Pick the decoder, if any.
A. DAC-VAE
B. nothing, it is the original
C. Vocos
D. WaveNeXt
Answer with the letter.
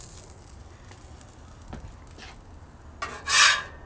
B